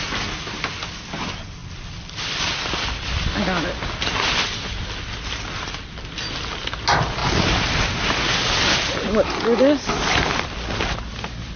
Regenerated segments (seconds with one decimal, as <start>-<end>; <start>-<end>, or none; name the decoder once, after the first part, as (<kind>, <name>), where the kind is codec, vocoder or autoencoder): none